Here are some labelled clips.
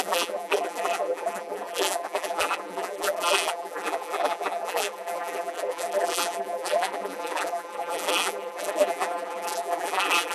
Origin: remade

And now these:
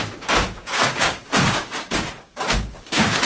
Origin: remade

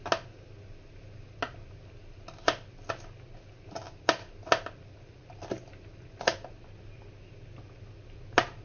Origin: recorded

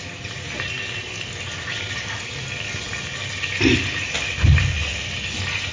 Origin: recorded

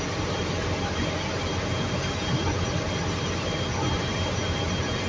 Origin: recorded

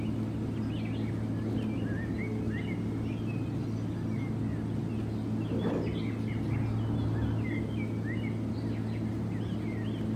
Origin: recorded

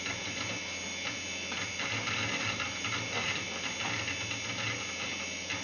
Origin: recorded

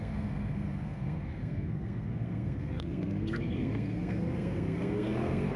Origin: remade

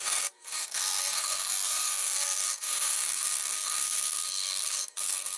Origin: remade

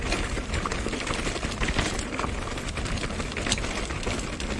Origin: recorded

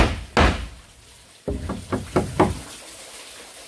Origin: recorded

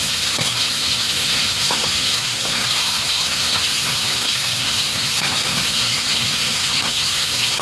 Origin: remade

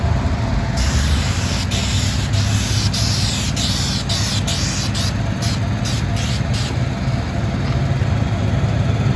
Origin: recorded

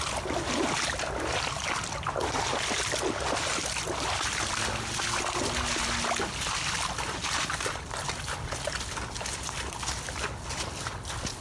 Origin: recorded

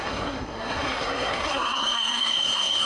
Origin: remade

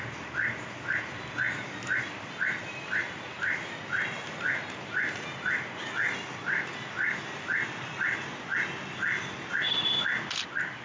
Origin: recorded